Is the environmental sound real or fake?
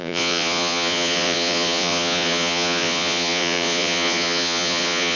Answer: fake